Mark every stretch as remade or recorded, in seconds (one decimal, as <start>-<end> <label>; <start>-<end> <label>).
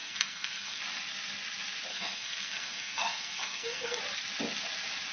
0.0-0.8 remade; 0.8-1.9 recorded; 1.9-4.0 remade; 4.0-5.1 recorded